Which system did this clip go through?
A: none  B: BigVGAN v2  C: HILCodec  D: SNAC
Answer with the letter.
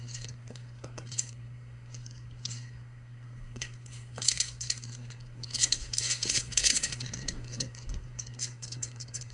D